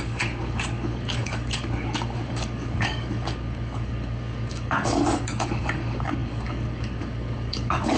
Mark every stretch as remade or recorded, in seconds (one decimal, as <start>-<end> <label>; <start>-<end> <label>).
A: 0.0-8.0 remade